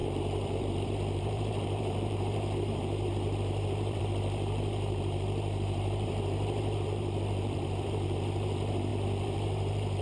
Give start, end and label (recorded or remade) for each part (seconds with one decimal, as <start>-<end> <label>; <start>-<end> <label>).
0.0-10.0 remade